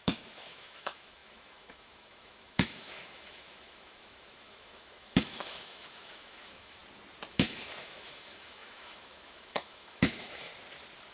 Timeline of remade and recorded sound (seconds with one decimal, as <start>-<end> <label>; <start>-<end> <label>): 0.0-6.8 remade; 6.8-7.3 recorded; 7.3-10.5 remade; 10.5-11.1 recorded